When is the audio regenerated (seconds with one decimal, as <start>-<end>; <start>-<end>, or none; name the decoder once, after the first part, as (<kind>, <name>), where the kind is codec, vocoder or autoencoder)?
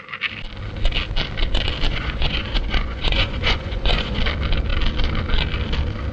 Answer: 1.9-4.2 (vocoder, Vocos)